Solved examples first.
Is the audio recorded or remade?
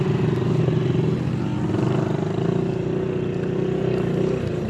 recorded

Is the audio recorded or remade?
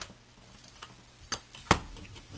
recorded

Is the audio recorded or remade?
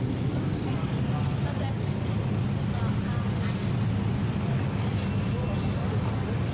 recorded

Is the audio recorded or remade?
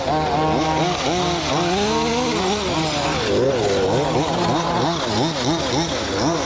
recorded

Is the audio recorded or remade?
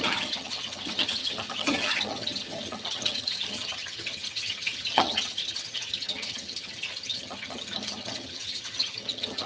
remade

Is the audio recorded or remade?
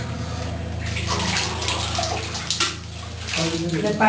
recorded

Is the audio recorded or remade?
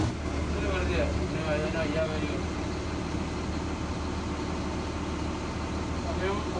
recorded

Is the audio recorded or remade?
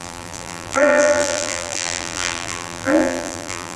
remade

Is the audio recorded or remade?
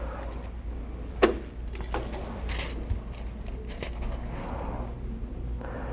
recorded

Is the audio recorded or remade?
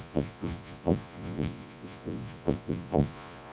remade